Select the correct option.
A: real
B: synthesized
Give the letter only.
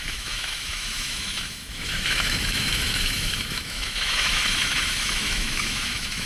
B